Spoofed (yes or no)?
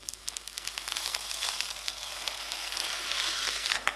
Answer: yes